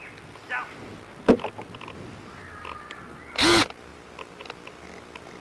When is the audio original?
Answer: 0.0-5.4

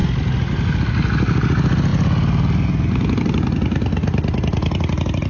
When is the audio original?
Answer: 0.0-5.3